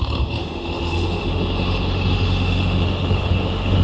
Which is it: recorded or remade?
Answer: remade